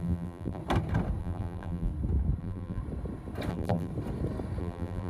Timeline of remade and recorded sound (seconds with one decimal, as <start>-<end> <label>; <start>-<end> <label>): 0.0-0.6 remade; 0.6-1.2 recorded; 1.2-1.9 remade; 1.9-2.4 recorded; 2.4-2.8 remade; 2.8-3.5 recorded; 3.5-3.9 remade; 3.9-4.6 recorded; 4.6-5.1 remade